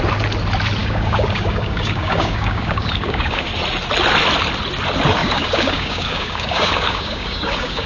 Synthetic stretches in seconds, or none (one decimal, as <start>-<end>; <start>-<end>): 0.8-3.5; 5.2-7.9